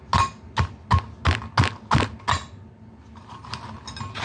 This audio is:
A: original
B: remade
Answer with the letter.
A